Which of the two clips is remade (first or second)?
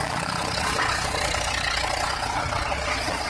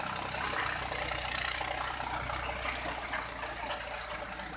first